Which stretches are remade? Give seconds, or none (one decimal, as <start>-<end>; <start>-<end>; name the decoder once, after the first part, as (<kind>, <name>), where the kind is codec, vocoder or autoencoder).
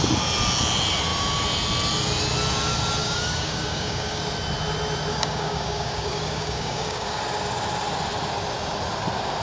3.0-4.2 (codec, DAC); 5.1-7.2